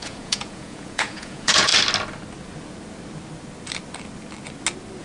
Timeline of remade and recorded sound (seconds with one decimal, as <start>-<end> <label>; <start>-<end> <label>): 0.0-1.7 remade; 1.7-5.0 recorded